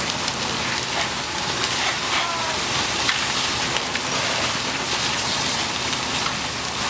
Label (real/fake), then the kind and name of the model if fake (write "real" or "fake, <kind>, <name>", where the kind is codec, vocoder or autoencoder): real